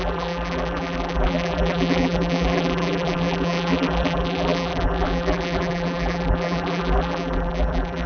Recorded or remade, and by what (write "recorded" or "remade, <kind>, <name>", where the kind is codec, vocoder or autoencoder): remade, vocoder, BigVGAN v2